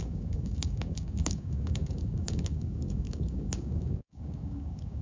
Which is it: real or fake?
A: fake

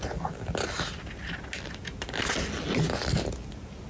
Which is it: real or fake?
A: real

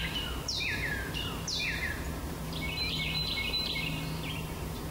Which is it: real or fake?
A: fake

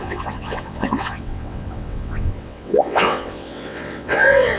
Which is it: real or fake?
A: fake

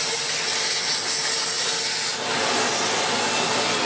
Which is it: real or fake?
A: real